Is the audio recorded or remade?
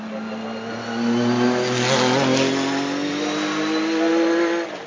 recorded